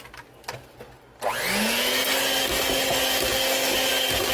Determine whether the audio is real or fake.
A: real